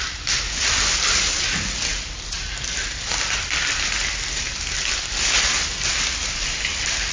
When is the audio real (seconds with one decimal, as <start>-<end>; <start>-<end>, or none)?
0.0-7.1